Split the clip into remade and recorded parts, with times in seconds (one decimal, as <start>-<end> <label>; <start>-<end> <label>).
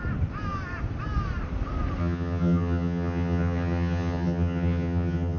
0.0-2.0 recorded; 2.0-5.4 remade